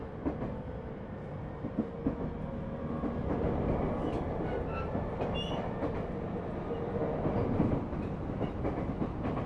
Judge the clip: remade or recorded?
recorded